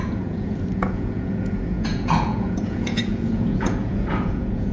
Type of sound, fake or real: fake